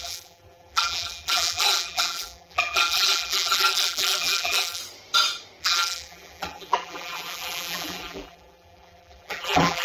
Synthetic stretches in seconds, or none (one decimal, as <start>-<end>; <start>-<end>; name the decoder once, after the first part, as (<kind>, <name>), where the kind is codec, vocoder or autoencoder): 0.0-4.8 (vocoder, BigVGAN v2); 5.6-9.8